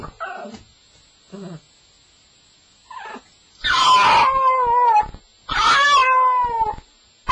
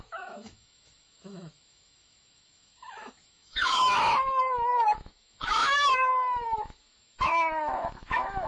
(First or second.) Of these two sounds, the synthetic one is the second